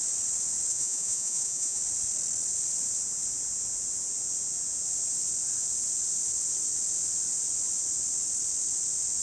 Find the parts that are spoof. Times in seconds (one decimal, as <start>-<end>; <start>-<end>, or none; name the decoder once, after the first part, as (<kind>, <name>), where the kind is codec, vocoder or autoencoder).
0.7-1.8 (vocoder, Vocos)